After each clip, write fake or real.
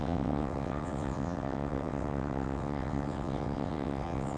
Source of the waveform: fake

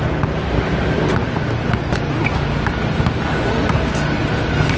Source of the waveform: real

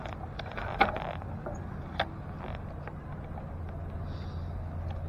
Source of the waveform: real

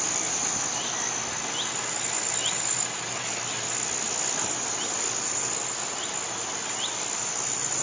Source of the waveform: real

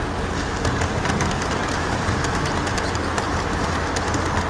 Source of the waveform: real